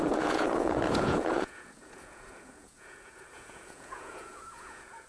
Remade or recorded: remade